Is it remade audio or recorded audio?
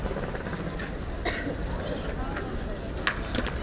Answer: recorded